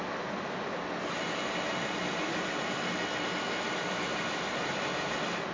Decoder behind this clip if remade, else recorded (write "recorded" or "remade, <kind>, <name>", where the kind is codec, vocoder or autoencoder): recorded